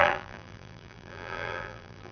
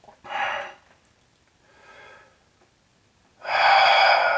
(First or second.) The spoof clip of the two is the first